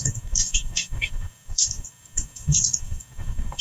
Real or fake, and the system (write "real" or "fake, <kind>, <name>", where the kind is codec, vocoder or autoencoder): fake, codec, DAC